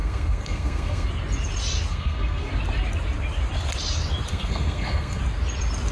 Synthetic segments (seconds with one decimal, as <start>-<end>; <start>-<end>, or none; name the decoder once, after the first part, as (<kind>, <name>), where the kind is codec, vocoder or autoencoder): 0.0-1.1 (codec, SNAC); 1.9-2.5; 4.3-5.2